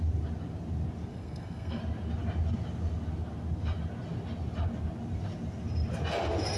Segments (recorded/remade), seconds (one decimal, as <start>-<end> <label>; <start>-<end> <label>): 0.0-1.1 recorded; 1.1-1.8 remade; 1.8-6.6 recorded